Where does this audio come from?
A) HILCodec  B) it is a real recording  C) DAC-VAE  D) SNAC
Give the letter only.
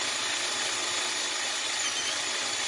B